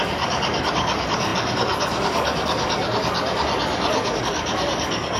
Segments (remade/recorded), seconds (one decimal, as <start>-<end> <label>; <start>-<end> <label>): 0.0-5.2 remade